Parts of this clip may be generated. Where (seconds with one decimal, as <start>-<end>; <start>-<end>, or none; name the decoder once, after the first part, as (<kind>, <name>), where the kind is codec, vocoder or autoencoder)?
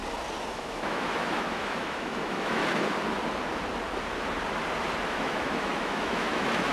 0.5-2.6 (autoencoder, DAC-VAE); 5.1-6.7